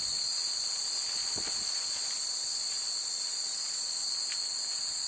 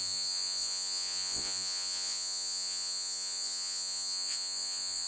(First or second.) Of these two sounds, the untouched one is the first